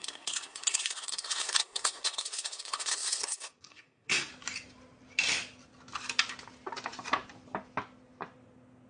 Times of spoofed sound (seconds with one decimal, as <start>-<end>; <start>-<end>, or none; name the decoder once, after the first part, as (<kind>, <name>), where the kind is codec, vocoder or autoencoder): 0.0-4.3 (codec, SNAC)